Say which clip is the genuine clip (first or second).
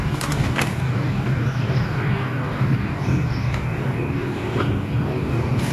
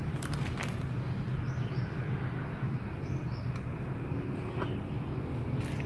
second